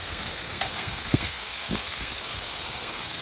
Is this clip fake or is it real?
fake